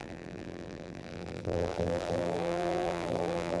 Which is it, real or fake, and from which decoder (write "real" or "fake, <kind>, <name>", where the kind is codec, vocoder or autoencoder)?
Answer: fake, vocoder, BigVGAN v2